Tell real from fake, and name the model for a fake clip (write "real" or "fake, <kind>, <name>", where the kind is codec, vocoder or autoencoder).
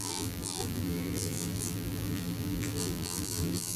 fake, vocoder, BigVGAN v2